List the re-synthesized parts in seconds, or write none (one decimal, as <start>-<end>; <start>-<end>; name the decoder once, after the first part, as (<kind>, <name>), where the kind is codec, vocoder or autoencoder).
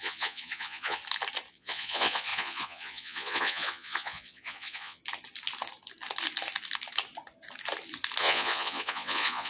0.0-1.0 (vocoder, Vocos); 1.5-5.0; 8.2-9.5